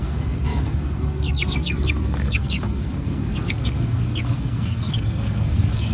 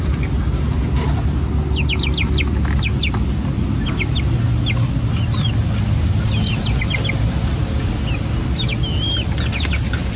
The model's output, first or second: first